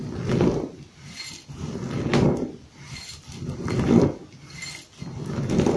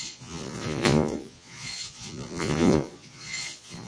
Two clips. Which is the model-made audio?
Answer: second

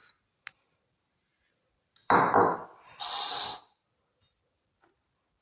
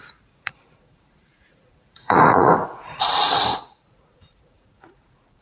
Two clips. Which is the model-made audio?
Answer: second